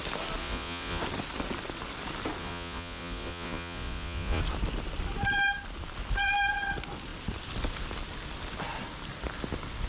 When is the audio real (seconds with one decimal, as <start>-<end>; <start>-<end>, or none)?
0.0-0.4; 1.0-2.4; 4.4-9.9